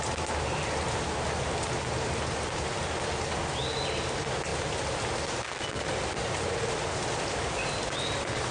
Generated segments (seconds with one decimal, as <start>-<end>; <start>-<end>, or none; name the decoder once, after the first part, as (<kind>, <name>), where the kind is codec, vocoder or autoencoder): none